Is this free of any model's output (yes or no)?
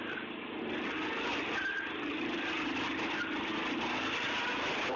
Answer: yes